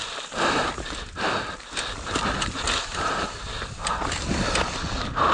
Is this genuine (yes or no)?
yes